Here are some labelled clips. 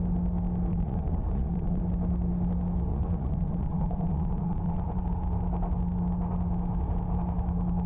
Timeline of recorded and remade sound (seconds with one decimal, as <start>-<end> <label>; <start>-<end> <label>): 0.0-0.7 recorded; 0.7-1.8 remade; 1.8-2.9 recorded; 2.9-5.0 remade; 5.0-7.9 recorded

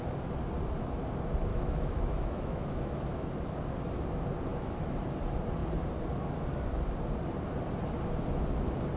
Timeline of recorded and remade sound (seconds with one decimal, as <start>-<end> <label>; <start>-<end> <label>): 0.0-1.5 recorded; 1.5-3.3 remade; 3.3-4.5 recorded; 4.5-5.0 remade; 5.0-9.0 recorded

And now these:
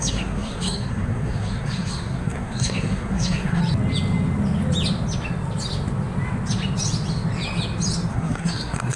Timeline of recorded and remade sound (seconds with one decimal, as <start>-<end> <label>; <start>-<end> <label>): 0.0-3.6 remade; 3.6-8.1 recorded; 8.1-9.0 remade

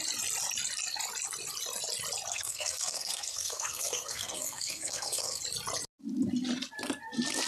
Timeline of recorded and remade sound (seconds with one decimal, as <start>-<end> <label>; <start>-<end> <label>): 0.0-2.3 recorded; 2.3-5.4 remade; 5.4-7.5 recorded